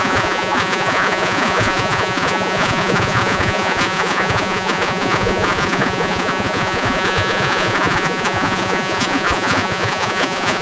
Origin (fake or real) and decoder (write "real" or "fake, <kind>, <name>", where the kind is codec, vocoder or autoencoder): fake, vocoder, Vocos